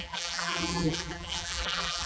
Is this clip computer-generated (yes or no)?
yes